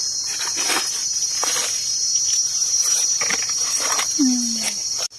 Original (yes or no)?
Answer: yes